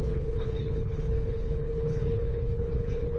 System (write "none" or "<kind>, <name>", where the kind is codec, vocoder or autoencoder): codec, HILCodec